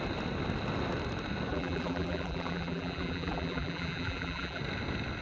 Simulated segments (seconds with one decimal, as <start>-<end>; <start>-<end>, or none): 1.5-4.6